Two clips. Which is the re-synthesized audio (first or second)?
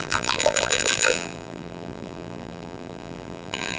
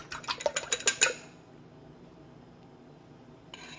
first